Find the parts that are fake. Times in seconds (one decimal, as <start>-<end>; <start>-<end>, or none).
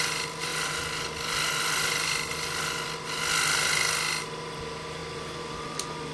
none